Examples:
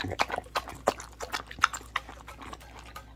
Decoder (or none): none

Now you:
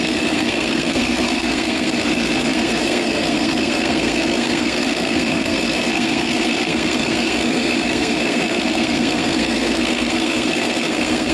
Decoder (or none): codec, SNAC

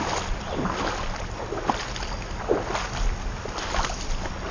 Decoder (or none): none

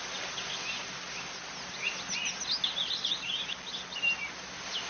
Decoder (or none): none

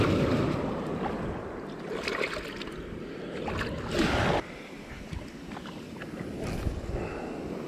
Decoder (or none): none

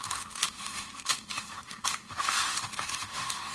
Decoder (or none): autoencoder, DAC-VAE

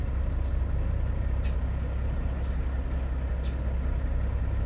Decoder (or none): none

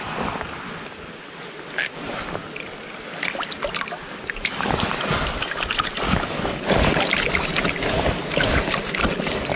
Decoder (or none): none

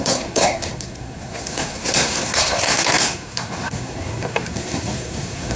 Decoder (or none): codec, SNAC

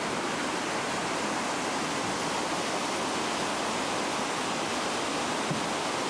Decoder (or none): none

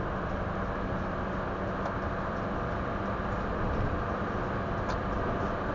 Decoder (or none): none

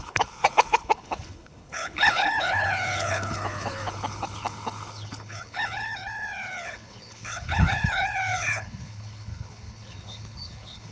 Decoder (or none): codec, HILCodec